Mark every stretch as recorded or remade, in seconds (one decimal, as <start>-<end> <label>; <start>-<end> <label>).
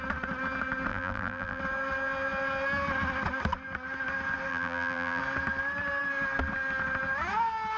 0.0-0.9 recorded; 0.9-1.6 remade; 1.6-4.5 recorded; 4.5-5.2 remade; 5.2-7.8 recorded